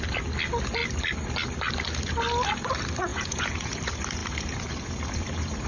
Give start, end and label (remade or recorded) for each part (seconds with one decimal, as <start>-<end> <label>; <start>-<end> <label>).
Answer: 0.0-3.1 recorded; 3.1-3.8 remade; 3.8-5.7 recorded

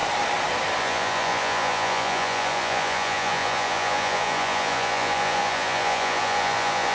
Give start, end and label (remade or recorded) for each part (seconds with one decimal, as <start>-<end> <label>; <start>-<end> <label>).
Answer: 0.0-0.8 recorded; 0.8-6.9 remade

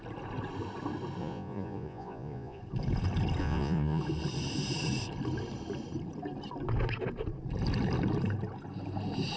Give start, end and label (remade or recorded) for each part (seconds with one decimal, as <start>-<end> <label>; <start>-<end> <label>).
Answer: 0.0-1.2 recorded; 1.2-2.6 remade; 2.6-3.4 recorded; 3.4-4.0 remade; 4.0-9.4 recorded

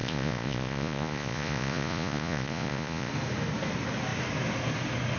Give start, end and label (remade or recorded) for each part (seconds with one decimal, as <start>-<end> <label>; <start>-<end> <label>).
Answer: 0.0-3.1 remade; 3.1-5.2 recorded

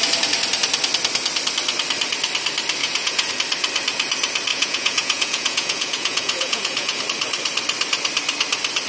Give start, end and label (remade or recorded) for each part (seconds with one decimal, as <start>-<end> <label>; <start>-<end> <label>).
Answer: 0.0-2.8 recorded; 2.8-3.3 remade; 3.3-4.5 recorded; 4.5-7.0 remade; 7.0-8.9 recorded

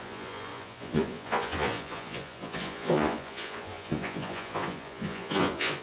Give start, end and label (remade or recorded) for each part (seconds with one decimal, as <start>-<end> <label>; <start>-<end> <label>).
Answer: 0.0-5.8 remade

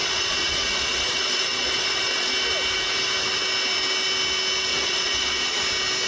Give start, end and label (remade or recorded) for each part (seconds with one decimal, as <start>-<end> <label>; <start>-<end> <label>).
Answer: 0.0-2.3 remade; 2.3-4.7 recorded; 4.7-5.6 remade; 5.6-6.1 recorded